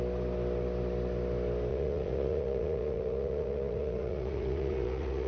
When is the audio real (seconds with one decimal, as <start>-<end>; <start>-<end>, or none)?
0.0-1.7